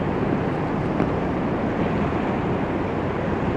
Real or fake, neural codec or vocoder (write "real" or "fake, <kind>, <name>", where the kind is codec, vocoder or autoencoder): real